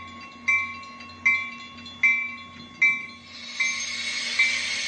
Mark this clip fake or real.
real